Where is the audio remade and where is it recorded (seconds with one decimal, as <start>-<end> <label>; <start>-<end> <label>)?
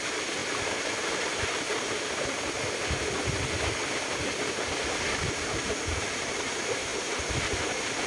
0.0-0.4 remade; 0.4-5.3 recorded; 5.3-8.1 remade